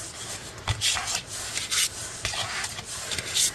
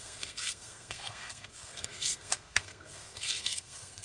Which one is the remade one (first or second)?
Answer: second